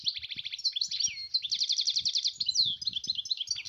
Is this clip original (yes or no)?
yes